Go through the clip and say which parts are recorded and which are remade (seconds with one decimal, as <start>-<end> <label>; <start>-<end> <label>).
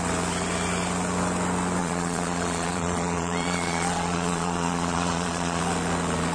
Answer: 0.0-1.8 recorded; 1.8-5.6 remade; 5.6-6.3 recorded